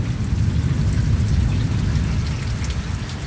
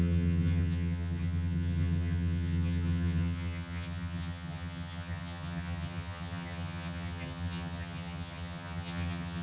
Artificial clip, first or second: second